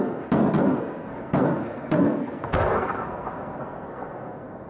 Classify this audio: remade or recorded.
remade